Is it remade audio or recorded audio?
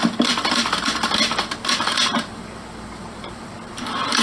remade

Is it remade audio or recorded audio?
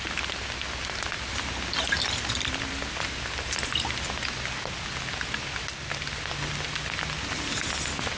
recorded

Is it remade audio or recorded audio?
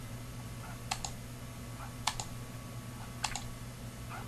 recorded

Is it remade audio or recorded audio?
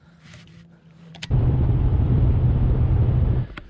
remade